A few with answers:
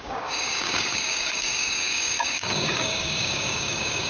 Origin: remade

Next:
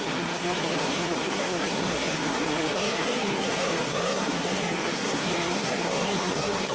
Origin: remade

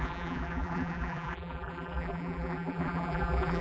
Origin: remade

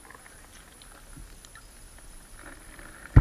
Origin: recorded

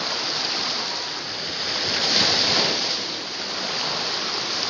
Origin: recorded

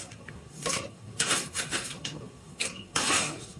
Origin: remade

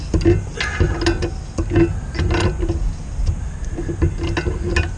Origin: recorded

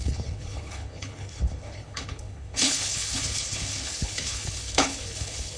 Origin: remade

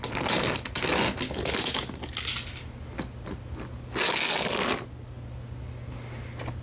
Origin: recorded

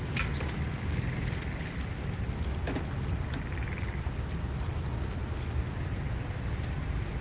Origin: recorded